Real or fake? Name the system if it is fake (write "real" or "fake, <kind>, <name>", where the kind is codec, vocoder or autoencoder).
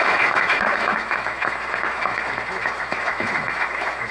fake, autoencoder, DAC-VAE